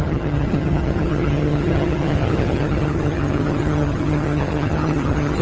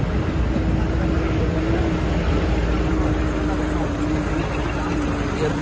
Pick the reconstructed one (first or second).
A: first